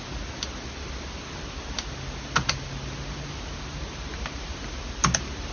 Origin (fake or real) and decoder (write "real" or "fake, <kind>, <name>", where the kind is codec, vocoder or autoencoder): real